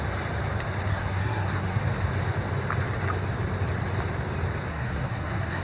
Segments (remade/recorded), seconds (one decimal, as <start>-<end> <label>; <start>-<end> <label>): 0.0-0.9 recorded; 0.9-1.8 remade; 1.8-4.7 recorded; 4.7-5.6 remade